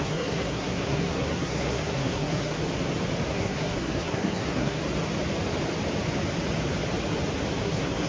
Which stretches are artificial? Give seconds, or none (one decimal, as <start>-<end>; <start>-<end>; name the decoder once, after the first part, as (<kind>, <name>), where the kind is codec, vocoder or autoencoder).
0.0-2.6 (codec, SNAC); 3.3-4.8; 7.6-8.1